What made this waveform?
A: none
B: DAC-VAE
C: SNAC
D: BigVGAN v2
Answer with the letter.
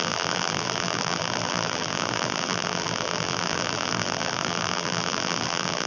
D